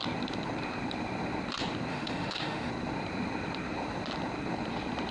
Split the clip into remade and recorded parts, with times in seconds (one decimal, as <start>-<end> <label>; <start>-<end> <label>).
0.0-1.9 recorded; 1.9-2.7 remade; 2.7-5.1 recorded